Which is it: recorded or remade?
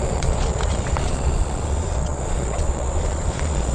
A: remade